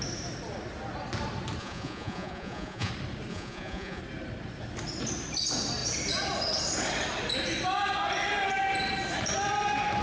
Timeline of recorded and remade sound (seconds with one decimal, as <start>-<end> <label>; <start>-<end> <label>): 0.0-1.6 recorded; 1.6-2.9 remade; 2.9-3.3 recorded; 3.3-4.0 remade; 4.0-10.0 recorded